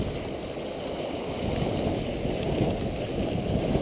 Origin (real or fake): real